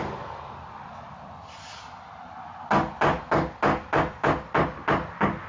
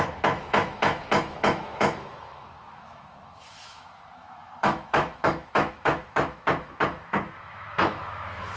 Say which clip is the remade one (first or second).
second